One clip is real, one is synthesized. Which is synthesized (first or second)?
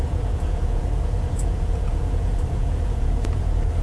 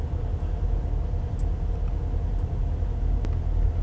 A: first